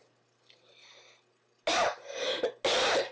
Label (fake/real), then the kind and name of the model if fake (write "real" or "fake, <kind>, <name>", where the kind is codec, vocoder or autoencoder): real